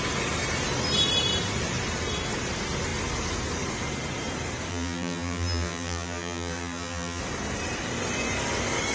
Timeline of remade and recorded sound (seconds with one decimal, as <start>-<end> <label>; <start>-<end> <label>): 0.0-4.7 recorded; 4.7-7.2 remade; 7.2-8.9 recorded